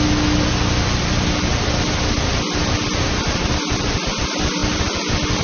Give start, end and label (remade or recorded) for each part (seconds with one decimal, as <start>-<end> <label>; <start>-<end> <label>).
0.0-5.4 recorded